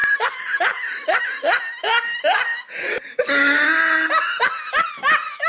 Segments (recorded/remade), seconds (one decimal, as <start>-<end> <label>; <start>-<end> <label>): 0.0-1.2 remade; 1.2-5.5 recorded